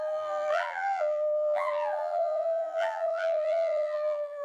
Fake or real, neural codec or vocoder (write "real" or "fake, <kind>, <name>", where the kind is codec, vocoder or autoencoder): fake, vocoder, BigVGAN v2